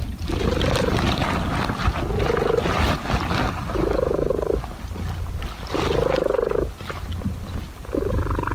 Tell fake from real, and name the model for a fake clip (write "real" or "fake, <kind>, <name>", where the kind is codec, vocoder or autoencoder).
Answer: real